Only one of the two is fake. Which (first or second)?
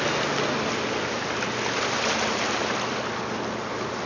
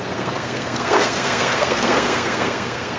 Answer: second